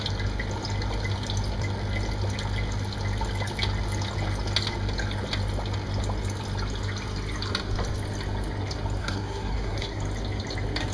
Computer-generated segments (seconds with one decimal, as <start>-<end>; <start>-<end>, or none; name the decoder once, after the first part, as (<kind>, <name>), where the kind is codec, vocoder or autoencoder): 9.0-10.0 (codec, SNAC)